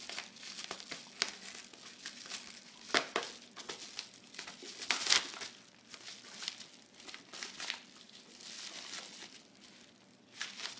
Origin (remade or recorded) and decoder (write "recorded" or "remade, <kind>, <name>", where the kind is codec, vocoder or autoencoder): recorded